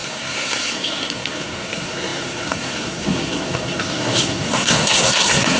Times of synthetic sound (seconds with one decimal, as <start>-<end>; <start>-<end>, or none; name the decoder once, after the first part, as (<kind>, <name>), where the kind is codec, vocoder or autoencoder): 0.0-5.6 (codec, SNAC)